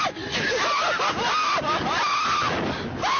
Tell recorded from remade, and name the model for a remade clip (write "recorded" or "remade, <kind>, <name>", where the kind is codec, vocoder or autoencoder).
recorded